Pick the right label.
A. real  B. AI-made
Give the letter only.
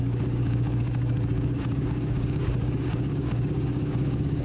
B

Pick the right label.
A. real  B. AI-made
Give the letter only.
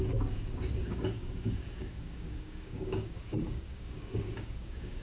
B